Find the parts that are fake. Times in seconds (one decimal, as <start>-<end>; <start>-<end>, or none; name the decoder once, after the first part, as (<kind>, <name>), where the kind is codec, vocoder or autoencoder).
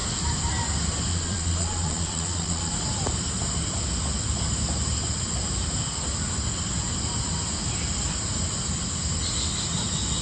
1.1-2.7 (vocoder, Vocos)